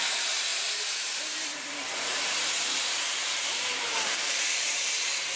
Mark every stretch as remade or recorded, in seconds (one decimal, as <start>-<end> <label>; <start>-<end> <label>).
0.0-5.4 remade